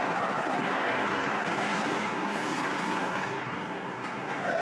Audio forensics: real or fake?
fake